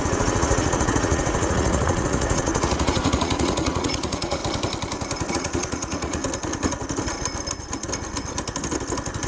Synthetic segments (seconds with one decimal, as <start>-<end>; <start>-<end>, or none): 0.0-4.4; 5.3-6.2